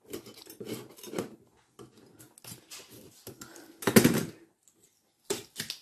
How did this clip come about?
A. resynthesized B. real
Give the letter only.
B